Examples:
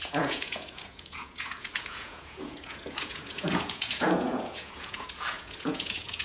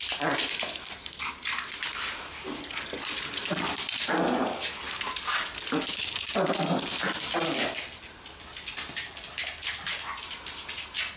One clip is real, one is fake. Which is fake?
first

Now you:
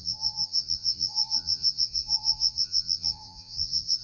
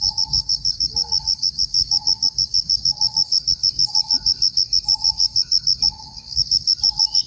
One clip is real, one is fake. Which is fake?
first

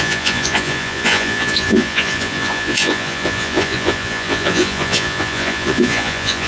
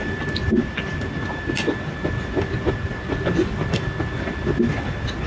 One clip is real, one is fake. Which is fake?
first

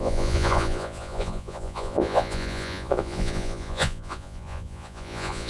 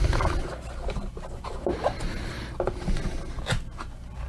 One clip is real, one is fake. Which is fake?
first